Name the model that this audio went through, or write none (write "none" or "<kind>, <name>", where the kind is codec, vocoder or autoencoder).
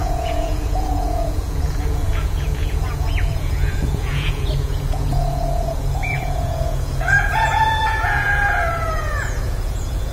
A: vocoder, Vocos